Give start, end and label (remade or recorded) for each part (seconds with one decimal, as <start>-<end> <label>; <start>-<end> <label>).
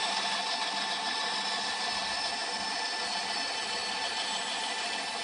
0.0-5.2 recorded